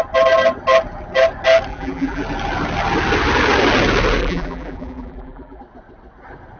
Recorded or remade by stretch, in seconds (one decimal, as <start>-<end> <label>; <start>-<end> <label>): 0.0-1.7 recorded; 1.7-2.2 remade; 2.2-4.2 recorded; 4.2-5.6 remade; 5.6-6.6 recorded